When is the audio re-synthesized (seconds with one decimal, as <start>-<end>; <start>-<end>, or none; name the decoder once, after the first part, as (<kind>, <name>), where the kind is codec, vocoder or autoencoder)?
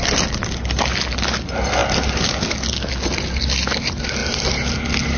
none